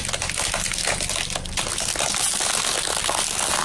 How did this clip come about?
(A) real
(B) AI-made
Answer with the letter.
A